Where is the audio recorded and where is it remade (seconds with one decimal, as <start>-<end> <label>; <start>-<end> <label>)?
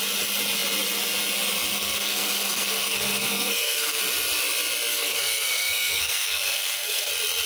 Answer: 0.0-1.7 recorded; 1.7-4.0 remade; 4.0-4.9 recorded; 4.9-7.1 remade; 7.1-7.5 recorded